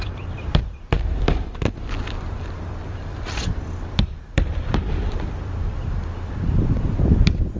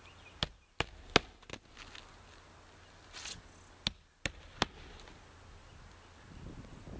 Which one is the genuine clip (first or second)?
second